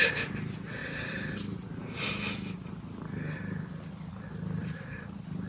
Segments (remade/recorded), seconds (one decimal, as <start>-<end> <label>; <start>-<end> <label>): 0.0-4.6 recorded; 4.6-5.5 remade